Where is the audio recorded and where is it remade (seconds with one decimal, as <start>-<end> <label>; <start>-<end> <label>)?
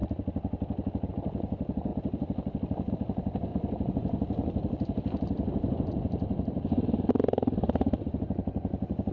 0.0-3.5 recorded; 3.5-7.1 remade; 7.1-9.1 recorded